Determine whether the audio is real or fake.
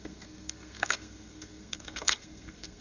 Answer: fake